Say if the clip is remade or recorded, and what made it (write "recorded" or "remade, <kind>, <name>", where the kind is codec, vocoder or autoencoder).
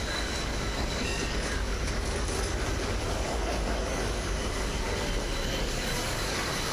remade, codec, DAC